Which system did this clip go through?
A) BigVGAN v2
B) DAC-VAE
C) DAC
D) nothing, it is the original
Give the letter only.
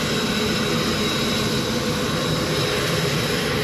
D